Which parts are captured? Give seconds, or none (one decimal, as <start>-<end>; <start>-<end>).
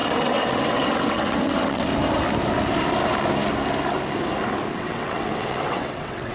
1.9-4.7